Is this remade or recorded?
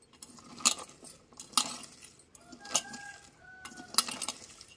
recorded